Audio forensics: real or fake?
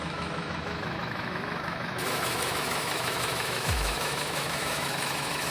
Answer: fake